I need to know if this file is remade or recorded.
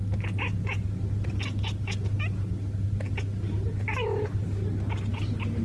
recorded